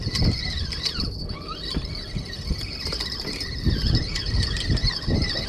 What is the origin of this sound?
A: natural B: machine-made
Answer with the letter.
A